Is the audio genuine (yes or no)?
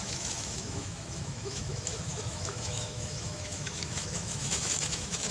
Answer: no